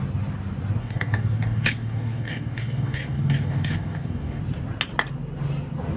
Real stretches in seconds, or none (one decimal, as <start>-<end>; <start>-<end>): 0.0-0.8; 4.4-6.0